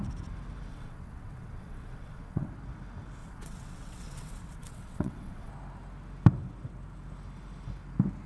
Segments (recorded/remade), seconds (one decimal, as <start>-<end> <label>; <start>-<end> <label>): 0.0-0.7 recorded; 0.7-2.5 remade; 2.5-3.2 recorded; 3.2-5.5 remade; 5.5-8.3 recorded